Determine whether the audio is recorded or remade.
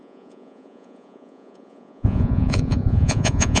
remade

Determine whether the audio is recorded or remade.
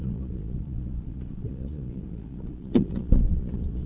remade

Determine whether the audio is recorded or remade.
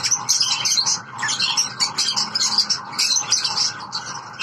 recorded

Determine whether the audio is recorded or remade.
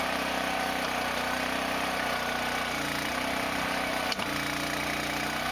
recorded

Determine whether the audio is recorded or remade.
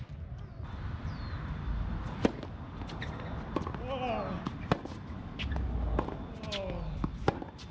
recorded